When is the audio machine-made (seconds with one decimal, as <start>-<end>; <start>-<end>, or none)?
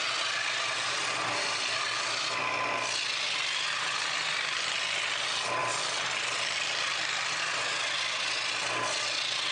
none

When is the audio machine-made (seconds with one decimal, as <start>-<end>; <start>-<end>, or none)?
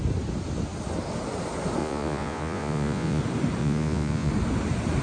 1.8-3.2; 3.6-4.3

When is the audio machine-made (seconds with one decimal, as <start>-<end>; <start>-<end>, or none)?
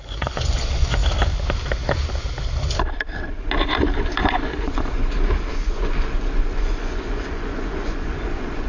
0.0-1.0; 4.3-5.0; 5.5-8.7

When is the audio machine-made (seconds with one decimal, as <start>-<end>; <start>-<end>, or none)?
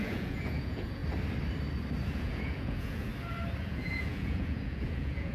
0.0-1.0; 2.1-3.1; 3.6-5.3